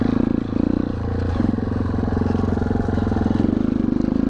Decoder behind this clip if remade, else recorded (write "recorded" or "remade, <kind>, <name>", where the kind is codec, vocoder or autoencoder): recorded